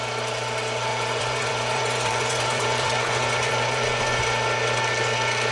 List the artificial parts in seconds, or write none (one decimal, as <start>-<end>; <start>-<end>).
0.9-4.2